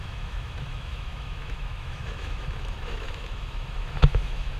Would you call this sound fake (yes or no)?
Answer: yes